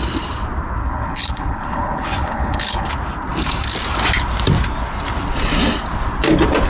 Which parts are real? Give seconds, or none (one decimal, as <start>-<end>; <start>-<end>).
0.0-0.8; 2.9-6.7